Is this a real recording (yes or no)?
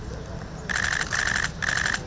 yes